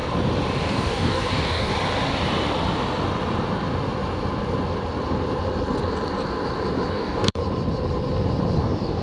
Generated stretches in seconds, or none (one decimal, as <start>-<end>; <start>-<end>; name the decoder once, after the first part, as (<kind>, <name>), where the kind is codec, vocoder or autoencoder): 0.6-1.7 (codec, DAC); 6.9-7.4; 8.6-9.0